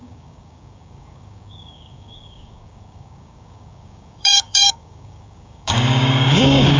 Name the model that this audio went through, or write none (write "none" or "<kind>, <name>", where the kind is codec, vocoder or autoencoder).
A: codec, DAC